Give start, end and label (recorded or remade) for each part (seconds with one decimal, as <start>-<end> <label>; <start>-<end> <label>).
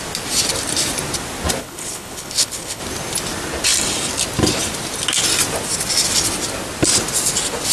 0.0-1.6 recorded; 1.6-2.8 remade; 2.8-7.7 recorded